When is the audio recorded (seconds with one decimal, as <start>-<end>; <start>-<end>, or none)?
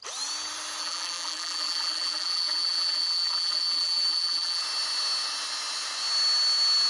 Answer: 0.0-0.8; 4.6-6.9